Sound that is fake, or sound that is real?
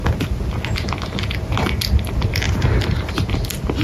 real